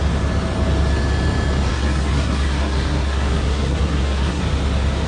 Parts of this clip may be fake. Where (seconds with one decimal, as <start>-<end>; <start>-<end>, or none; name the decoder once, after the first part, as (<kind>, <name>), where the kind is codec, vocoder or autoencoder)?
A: 1.7-4.4 (codec, SNAC)